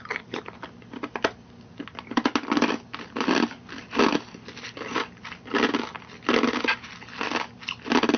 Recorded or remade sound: recorded